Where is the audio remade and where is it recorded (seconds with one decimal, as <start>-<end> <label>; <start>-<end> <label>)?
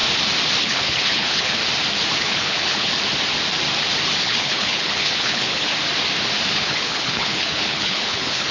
0.0-0.6 recorded; 0.6-1.6 remade; 1.6-2.2 recorded; 2.2-2.9 remade; 2.9-4.2 recorded; 4.2-5.7 remade; 5.7-6.5 recorded; 6.5-8.5 remade